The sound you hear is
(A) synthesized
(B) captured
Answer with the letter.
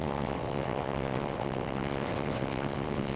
A